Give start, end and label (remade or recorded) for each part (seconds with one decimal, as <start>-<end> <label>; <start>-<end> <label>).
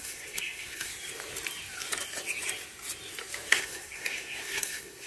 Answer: 0.0-0.9 remade; 0.9-3.5 recorded; 3.5-5.1 remade